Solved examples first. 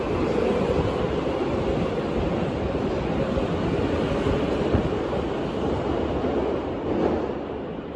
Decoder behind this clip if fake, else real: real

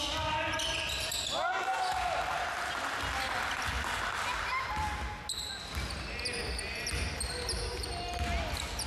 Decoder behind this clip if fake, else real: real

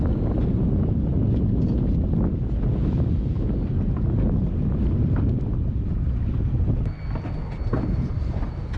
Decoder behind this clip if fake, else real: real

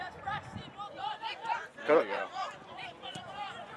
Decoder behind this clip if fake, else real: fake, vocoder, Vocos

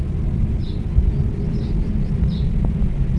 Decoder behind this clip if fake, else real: real